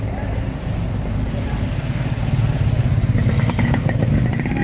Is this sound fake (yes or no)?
no